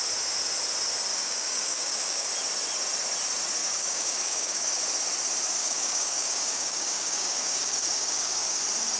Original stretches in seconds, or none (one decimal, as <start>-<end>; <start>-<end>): 0.0-1.1; 2.3-3.6; 4.8-5.6; 8.6-9.0